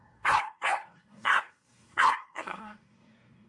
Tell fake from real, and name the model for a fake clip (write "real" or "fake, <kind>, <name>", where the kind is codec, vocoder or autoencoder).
fake, codec, SNAC